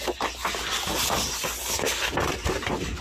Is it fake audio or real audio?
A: real